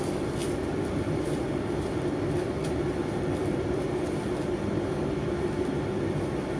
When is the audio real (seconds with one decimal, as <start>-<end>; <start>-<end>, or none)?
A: 0.0-6.6